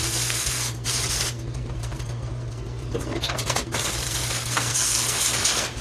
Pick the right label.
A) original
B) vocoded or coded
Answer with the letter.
B